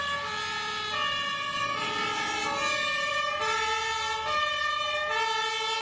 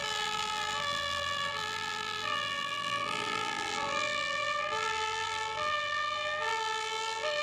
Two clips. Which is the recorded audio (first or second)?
first